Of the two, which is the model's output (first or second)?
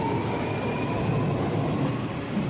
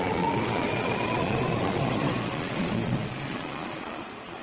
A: second